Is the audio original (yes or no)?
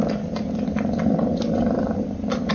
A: yes